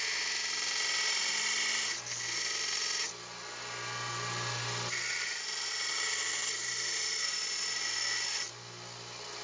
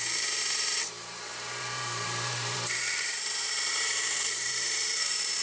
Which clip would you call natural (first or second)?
first